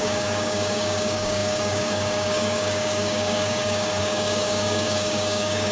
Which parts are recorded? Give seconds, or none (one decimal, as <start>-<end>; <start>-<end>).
none